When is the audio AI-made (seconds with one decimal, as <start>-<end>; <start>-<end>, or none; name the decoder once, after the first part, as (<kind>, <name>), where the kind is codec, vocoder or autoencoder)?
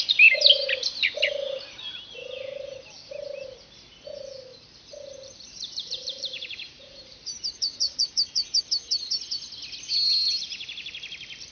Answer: 4.5-8.6 (vocoder, BigVGAN v2)